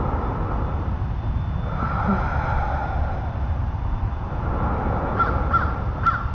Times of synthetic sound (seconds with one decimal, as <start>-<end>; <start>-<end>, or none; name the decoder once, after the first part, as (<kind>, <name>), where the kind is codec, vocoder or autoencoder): 2.8-3.8 (vocoder, BigVGAN v2)